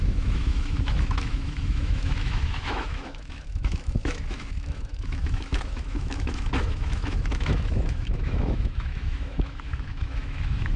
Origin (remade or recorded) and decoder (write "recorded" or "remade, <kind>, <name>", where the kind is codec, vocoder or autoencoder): remade, autoencoder, DAC-VAE